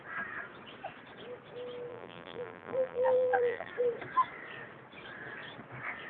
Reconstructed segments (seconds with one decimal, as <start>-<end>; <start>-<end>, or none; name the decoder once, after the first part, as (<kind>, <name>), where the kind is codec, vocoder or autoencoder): 1.9-3.7 (vocoder, BigVGAN v2)